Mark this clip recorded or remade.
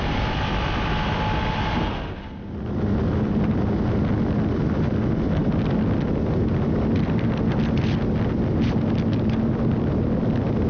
recorded